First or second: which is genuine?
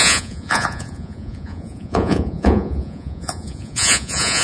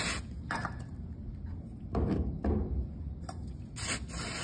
second